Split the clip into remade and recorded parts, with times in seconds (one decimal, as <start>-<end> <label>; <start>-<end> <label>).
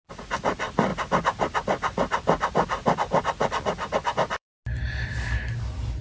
0.0-0.9 recorded; 0.9-4.5 remade; 4.5-6.0 recorded